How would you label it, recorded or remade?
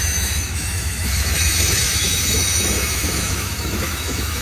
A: remade